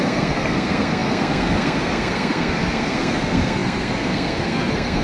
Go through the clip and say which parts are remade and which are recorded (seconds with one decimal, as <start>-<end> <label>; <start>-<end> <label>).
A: 0.0-5.0 remade